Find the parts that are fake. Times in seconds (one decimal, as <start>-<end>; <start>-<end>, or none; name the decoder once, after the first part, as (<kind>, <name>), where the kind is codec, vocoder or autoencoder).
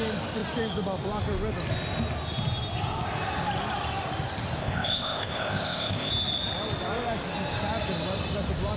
4.6-6.1 (codec, ZipCodec)